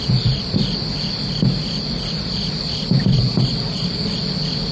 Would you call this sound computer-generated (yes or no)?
no